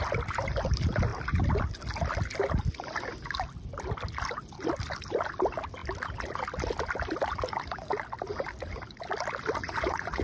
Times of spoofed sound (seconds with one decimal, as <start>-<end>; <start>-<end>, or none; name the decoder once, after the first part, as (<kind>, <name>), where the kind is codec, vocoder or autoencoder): 9.6-10.2 (vocoder, Vocos)

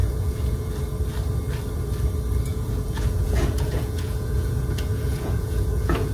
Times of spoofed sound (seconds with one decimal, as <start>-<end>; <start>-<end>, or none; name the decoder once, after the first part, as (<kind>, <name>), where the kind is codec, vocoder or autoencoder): 0.0-0.7 (vocoder, Vocos); 2.5-6.1

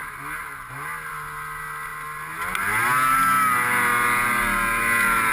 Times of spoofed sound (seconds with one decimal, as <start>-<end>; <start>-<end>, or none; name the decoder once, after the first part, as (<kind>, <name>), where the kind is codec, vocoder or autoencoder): none